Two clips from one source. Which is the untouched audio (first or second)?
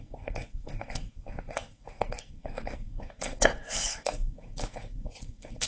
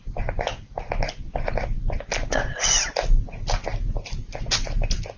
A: second